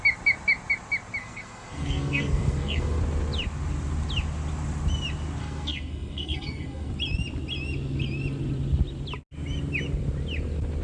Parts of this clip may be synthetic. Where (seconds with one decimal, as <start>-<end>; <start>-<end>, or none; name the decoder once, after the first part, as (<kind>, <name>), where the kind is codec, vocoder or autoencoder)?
1.2-3.0 (codec, SNAC); 5.4-6.9